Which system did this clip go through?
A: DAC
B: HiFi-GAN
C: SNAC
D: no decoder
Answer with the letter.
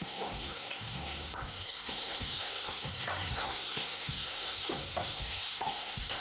C